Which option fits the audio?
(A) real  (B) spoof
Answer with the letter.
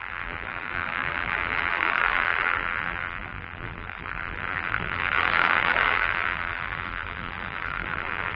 B